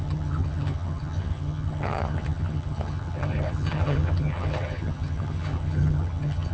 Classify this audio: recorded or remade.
remade